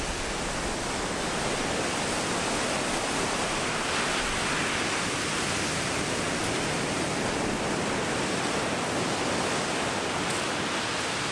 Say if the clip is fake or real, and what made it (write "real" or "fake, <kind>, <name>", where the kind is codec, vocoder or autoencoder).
real